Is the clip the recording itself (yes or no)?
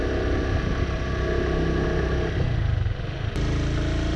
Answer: yes